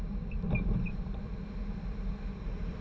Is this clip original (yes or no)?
yes